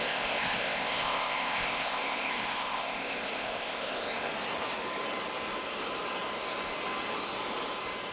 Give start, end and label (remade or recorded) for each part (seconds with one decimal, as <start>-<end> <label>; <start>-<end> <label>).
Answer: 0.0-4.3 remade; 4.3-8.1 recorded